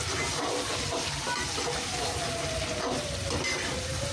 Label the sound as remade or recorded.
recorded